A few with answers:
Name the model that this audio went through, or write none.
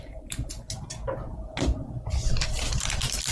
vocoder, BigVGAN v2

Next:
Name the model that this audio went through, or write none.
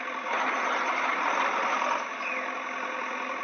none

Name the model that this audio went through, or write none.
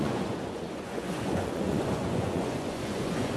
vocoder, Vocos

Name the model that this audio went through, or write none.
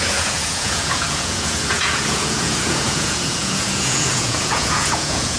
vocoder, Vocos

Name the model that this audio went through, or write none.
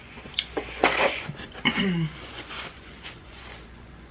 vocoder, Vocos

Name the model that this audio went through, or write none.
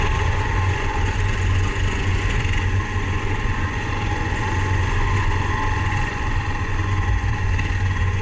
vocoder, Vocos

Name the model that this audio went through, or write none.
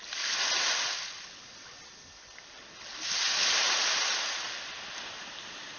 none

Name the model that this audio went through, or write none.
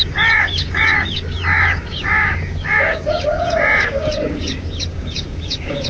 codec, DAC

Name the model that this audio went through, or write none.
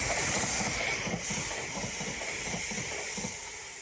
none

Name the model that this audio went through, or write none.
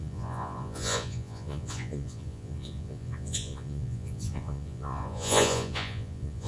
vocoder, Vocos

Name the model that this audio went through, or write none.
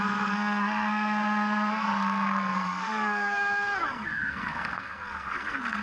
codec, SNAC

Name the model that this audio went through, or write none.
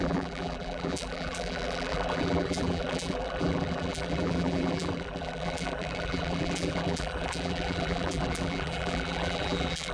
vocoder, BigVGAN v2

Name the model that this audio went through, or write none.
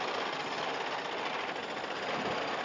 none